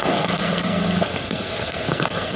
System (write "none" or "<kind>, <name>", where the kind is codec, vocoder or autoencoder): codec, SNAC